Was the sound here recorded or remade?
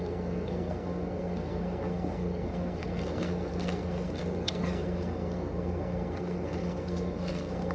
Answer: remade